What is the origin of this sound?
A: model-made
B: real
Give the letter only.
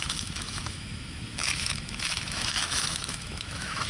A